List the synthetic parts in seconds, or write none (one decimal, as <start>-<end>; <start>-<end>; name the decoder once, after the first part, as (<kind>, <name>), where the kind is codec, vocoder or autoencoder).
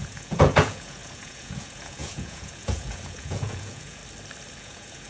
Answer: 0.0-4.0 (vocoder, Vocos); 4.6-5.1